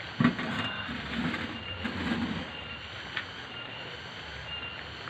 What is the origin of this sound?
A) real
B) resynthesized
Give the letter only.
A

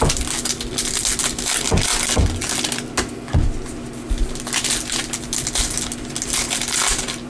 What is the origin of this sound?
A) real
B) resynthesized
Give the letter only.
A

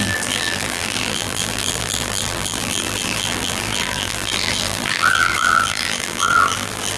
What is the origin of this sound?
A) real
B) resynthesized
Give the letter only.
B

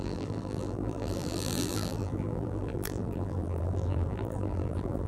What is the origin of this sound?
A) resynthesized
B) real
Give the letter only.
A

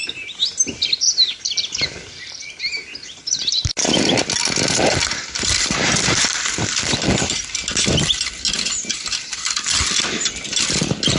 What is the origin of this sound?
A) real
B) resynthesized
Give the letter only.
B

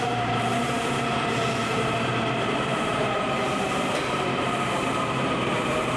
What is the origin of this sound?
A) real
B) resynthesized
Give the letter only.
B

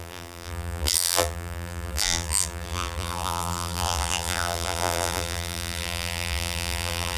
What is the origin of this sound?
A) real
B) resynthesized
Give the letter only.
B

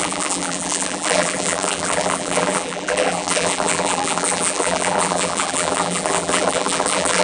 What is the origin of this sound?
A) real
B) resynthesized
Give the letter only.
B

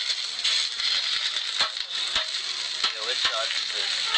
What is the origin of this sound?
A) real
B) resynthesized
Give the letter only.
A